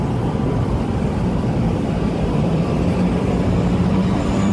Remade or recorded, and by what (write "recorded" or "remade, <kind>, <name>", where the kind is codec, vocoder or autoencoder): remade, vocoder, BigVGAN v2